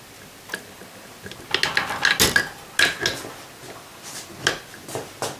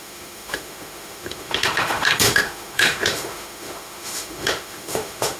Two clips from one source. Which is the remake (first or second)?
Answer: second